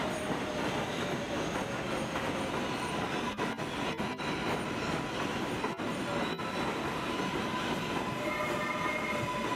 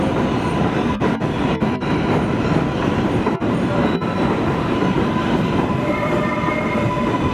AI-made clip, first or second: second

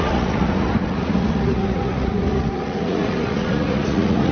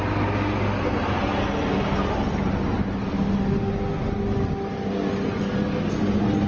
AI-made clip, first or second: first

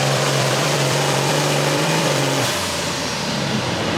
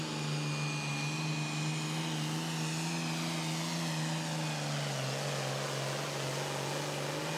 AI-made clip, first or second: first